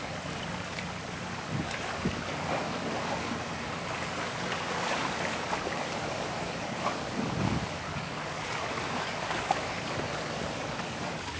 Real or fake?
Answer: fake